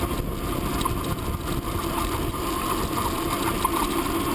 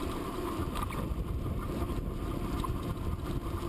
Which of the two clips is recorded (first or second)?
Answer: first